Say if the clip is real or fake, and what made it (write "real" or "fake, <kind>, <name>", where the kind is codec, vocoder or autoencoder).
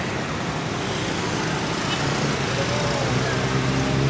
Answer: real